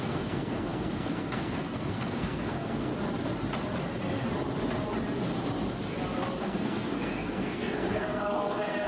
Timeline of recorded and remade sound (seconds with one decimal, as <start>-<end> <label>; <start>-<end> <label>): 0.0-2.9 remade; 2.9-6.4 recorded; 6.4-8.9 remade